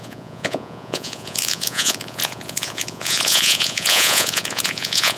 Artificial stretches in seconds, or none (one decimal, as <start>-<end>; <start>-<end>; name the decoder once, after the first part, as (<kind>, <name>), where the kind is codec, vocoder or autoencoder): 0.0-5.2 (vocoder, Vocos)